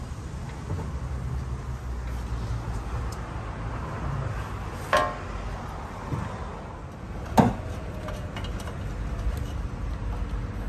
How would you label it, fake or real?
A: real